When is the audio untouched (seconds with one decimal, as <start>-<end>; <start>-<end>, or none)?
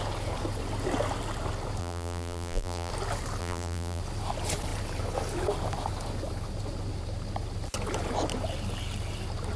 0.0-1.8; 2.9-3.4; 4.0-9.6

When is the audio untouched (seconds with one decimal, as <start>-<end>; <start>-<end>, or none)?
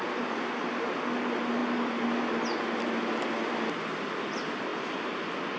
0.0-5.6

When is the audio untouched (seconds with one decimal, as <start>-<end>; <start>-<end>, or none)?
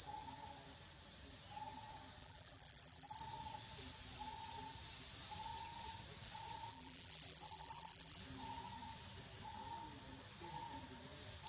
0.0-2.2; 3.2-6.7; 8.2-11.5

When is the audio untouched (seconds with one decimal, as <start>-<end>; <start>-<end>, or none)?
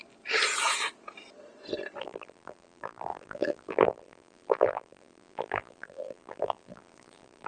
0.0-2.0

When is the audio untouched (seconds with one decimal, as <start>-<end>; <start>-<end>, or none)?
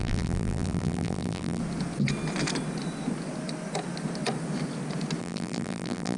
1.6-5.2